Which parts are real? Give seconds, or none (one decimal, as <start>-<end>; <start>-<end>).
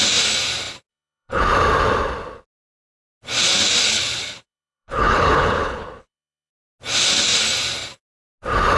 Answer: 0.0-0.9; 1.4-3.8; 6.5-8.8